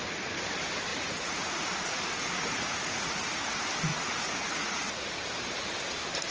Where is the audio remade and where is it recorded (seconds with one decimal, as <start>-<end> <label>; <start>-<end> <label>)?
0.0-0.9 recorded; 0.9-3.3 remade; 3.3-3.9 recorded; 3.9-5.2 remade; 5.2-6.3 recorded